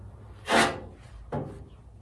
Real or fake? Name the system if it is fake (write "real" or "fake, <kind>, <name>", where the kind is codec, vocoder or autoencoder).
real